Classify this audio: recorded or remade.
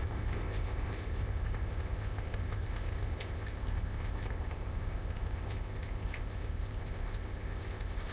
remade